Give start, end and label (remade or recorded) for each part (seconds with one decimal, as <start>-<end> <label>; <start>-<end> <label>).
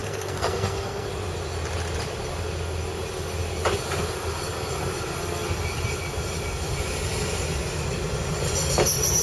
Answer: 0.0-1.1 remade; 1.1-9.2 recorded